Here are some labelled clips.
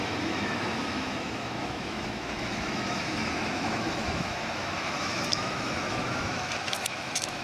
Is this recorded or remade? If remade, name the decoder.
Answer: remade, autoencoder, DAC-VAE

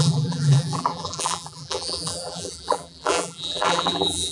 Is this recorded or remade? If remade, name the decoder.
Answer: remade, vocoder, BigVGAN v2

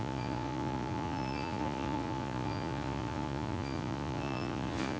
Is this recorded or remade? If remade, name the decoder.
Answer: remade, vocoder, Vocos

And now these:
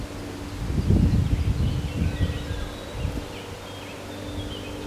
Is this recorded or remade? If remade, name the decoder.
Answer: recorded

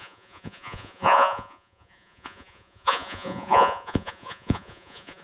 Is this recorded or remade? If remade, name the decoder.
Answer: remade, vocoder, Vocos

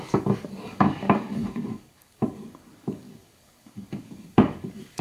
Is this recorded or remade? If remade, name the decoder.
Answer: remade, codec, DAC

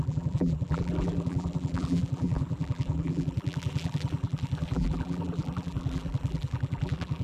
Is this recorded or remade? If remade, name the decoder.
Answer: remade, vocoder, BigVGAN v2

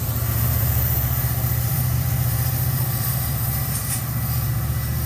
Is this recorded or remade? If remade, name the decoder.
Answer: remade, vocoder, BigVGAN v2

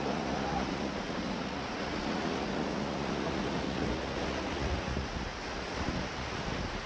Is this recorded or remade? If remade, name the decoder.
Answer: remade, vocoder, Vocos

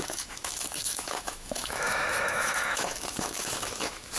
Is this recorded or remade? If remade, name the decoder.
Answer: remade, autoencoder, DAC-VAE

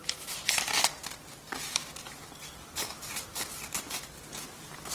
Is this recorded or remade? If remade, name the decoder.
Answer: recorded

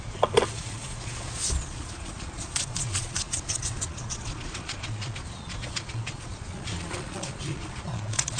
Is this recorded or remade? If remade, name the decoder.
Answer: remade, vocoder, Vocos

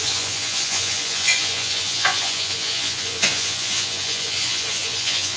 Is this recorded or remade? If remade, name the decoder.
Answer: remade, vocoder, Vocos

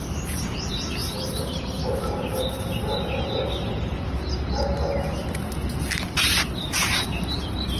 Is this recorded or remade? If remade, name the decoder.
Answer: recorded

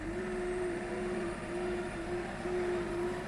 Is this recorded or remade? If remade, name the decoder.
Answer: remade, vocoder, BigVGAN v2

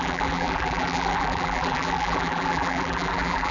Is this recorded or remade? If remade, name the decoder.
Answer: remade, vocoder, BigVGAN v2